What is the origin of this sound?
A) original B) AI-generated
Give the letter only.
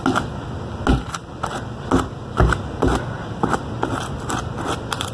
A